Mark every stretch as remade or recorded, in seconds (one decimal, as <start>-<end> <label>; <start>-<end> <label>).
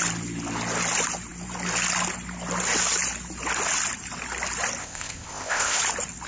0.0-4.8 recorded; 4.8-5.8 remade; 5.8-6.3 recorded